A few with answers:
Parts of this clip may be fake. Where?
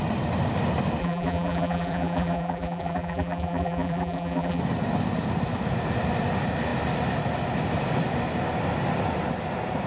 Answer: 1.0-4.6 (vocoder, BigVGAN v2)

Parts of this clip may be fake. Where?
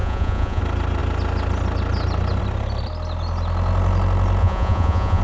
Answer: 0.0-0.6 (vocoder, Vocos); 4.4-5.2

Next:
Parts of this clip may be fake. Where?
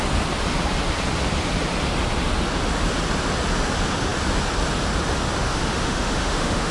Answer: 5.4-6.7 (autoencoder, DAC-VAE)